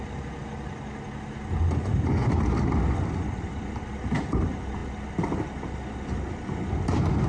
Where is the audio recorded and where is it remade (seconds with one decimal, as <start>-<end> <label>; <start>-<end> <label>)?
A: 0.0-7.3 recorded